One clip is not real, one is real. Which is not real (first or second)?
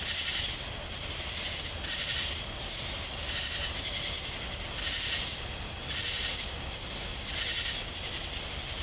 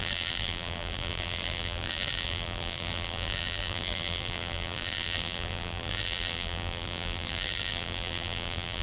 second